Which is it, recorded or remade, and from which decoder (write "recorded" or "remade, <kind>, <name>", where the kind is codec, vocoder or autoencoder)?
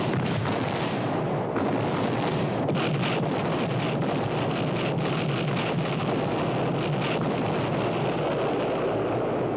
recorded